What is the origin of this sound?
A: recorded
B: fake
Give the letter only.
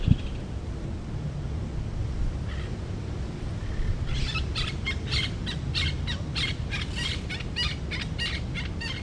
A